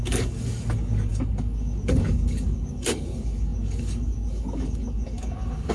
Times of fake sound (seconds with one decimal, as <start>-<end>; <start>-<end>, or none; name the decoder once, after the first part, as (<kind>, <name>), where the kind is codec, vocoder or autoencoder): 0.0-5.7 (codec, DAC)